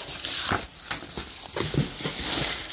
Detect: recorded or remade recorded